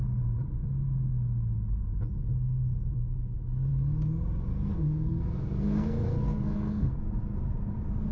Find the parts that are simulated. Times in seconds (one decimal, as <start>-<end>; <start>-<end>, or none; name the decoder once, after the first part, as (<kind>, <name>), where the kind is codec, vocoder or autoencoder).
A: 4.5-7.0 (codec, SNAC)